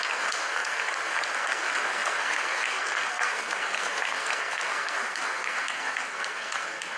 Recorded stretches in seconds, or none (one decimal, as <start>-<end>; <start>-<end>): none